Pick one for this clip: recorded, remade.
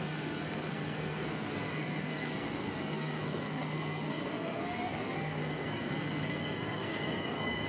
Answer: remade